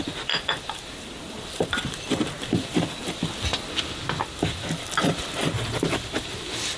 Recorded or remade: remade